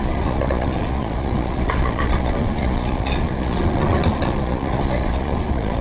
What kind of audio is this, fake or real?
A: fake